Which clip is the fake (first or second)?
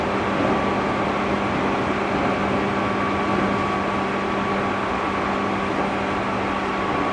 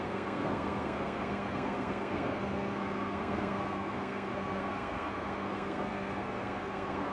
second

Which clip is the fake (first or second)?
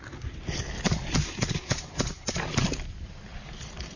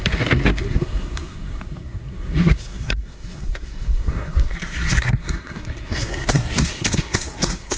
second